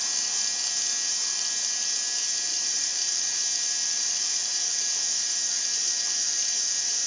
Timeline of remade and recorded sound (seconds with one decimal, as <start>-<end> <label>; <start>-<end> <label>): 0.0-2.5 recorded; 2.5-3.3 remade; 3.3-3.8 recorded; 3.8-7.1 remade